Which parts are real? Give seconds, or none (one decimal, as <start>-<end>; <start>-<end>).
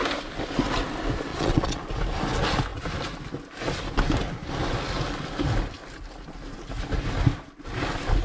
0.0-1.3; 1.8-8.2